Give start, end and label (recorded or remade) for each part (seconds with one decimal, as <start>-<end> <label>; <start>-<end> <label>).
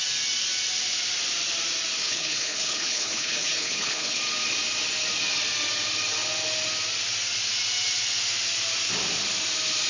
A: 0.0-2.0 recorded; 2.0-4.2 remade; 4.2-9.9 recorded